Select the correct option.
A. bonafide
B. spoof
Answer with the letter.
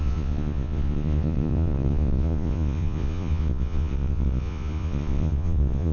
B